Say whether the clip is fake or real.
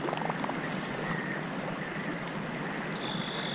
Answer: real